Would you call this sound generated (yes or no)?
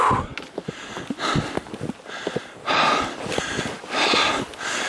no